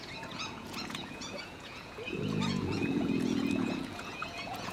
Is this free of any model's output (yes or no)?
no